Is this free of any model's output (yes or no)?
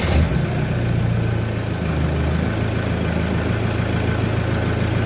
yes